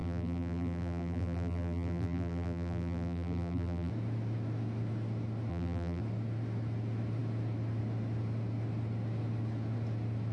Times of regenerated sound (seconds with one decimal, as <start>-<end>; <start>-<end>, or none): 0.0-3.9; 5.5-6.0